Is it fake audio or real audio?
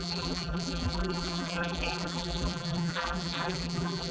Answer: fake